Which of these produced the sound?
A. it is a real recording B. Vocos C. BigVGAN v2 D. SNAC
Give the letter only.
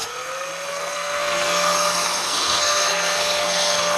D